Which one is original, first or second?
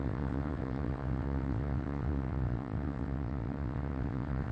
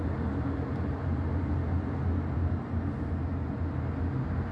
second